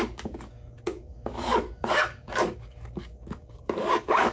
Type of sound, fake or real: fake